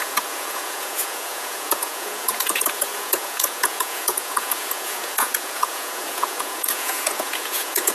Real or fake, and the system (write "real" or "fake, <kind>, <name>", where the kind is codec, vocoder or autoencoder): fake, vocoder, Vocos